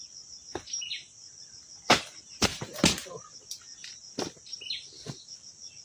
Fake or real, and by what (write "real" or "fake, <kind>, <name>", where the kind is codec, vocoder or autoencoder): real